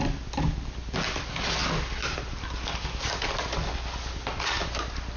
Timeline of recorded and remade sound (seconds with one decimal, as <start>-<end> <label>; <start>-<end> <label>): 0.0-5.2 recorded

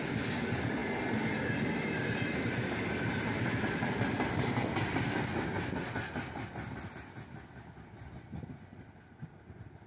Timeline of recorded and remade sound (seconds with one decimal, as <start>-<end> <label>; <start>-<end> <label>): 0.0-9.9 recorded

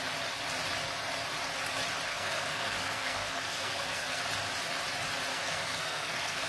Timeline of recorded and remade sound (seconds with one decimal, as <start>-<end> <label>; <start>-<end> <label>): 0.0-2.1 recorded; 2.1-4.2 remade; 4.2-5.3 recorded; 5.3-6.5 remade

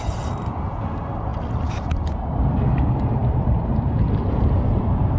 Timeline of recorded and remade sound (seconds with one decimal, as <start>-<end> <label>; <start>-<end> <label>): 0.0-1.3 remade; 1.3-2.7 recorded; 2.7-5.2 remade

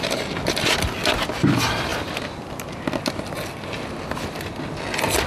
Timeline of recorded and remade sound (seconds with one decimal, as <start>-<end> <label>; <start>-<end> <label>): 0.0-5.3 recorded

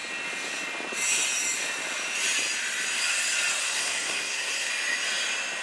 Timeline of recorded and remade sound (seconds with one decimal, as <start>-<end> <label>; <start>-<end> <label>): 0.0-3.6 recorded; 3.6-4.7 remade; 4.7-5.6 recorded